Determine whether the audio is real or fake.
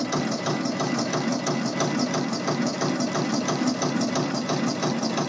real